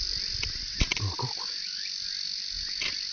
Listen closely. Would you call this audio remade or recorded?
recorded